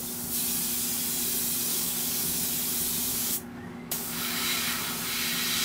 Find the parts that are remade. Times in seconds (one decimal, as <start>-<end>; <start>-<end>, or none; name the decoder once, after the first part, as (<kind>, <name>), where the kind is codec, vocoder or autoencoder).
1.7-2.4 (codec, DAC); 3.1-4.8